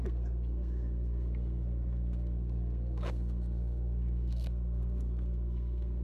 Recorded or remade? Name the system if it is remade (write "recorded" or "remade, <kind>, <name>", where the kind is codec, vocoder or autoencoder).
remade, codec, SNAC